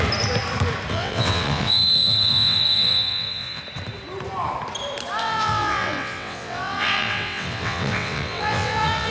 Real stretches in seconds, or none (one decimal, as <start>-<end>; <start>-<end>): 0.0-0.9; 3.6-5.2